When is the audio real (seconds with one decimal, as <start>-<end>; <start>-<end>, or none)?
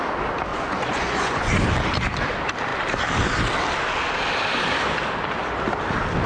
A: 0.0-0.5; 1.6-6.3